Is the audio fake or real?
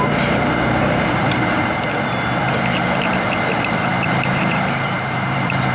fake